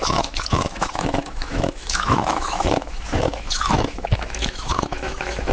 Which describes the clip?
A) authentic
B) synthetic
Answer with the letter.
B